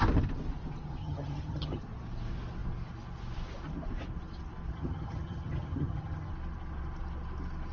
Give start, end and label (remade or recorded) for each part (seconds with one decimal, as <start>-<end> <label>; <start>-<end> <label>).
0.0-1.0 recorded; 1.0-1.8 remade; 1.8-4.7 recorded; 4.7-6.3 remade; 6.3-7.7 recorded